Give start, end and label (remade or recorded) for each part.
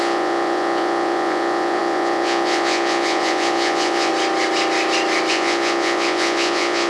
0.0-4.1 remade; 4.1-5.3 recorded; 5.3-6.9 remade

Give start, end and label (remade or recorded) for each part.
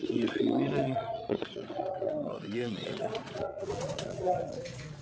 0.0-5.0 remade